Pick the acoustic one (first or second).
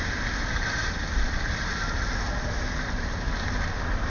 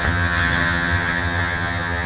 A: first